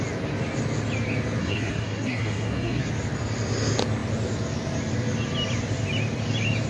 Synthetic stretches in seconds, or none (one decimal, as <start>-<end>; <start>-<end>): 1.4-2.9